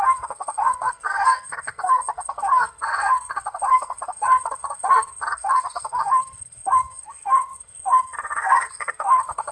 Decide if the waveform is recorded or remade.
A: remade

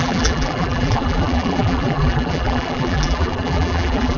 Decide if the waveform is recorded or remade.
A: remade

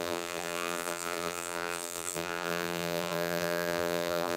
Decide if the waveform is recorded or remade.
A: remade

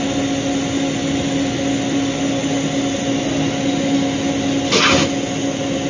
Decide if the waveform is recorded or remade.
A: recorded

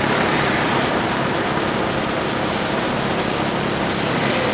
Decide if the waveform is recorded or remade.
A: recorded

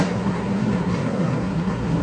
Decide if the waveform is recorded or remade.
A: remade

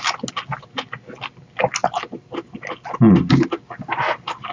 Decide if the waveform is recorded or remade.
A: recorded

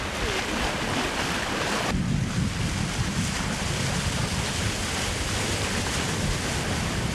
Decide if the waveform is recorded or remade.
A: recorded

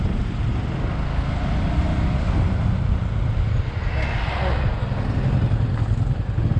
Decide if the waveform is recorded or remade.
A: recorded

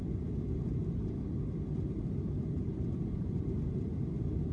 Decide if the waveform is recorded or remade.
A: recorded